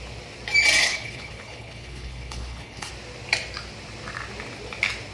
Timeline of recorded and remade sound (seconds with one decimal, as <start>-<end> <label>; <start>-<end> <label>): 0.0-0.8 recorded; 0.8-2.9 remade; 2.9-5.1 recorded